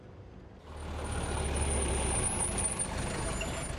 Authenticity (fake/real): real